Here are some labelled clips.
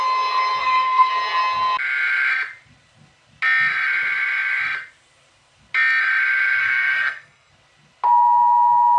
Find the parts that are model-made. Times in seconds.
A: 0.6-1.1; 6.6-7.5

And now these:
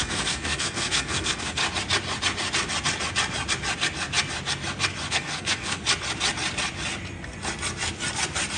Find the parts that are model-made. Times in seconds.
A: 0.0-1.6; 5.1-5.8

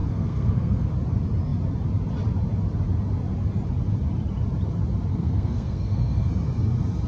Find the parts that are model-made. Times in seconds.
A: 0.0-0.9; 5.1-6.3

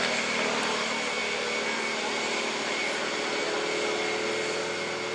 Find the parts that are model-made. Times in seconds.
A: none

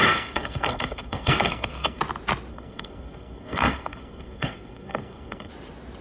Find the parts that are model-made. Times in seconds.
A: 0.0-2.0; 2.5-5.5

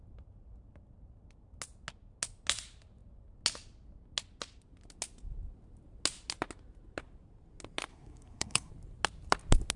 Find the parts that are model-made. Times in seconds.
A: 7.9-8.7

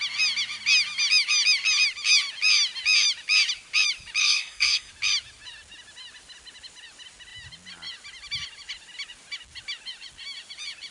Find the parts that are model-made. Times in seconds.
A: 4.2-4.9